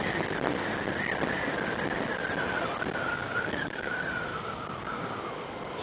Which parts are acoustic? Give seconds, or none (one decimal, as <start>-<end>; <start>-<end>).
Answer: 0.0-3.1; 3.9-4.3; 5.2-5.8